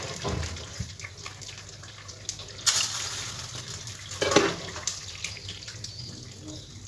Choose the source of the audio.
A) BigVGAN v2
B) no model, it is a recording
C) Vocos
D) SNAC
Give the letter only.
B